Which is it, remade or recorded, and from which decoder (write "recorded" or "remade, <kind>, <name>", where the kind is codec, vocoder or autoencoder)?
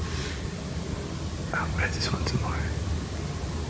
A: recorded